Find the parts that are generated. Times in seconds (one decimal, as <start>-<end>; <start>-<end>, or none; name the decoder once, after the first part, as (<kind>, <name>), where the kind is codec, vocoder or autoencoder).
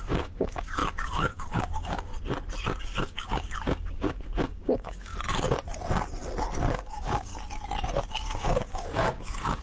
0.0-2.1 (codec, DAC); 2.8-5.1; 6.6-7.3; 8.0-9.6